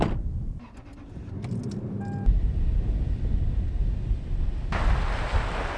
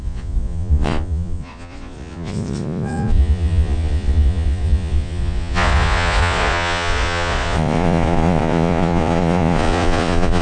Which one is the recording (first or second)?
first